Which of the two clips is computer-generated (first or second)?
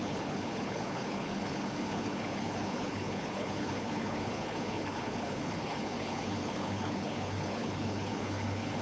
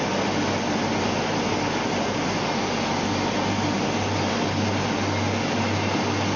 first